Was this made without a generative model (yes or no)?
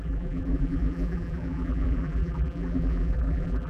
no